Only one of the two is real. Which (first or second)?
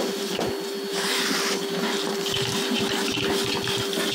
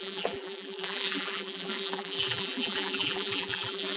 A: first